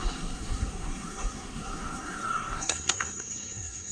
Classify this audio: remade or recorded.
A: remade